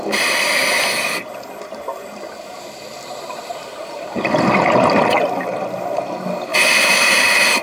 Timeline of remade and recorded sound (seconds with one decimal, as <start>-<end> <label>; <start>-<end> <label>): 0.0-7.6 recorded